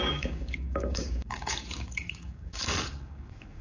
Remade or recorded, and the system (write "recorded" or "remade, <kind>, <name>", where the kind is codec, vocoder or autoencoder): remade, codec, DAC